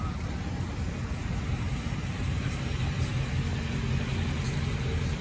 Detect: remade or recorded recorded